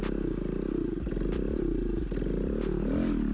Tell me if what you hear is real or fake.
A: real